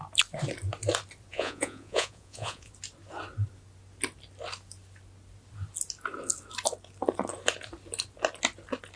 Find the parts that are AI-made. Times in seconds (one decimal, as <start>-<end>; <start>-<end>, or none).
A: 1.3-2.7